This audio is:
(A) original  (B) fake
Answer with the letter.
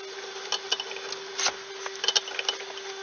A